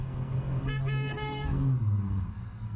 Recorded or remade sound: remade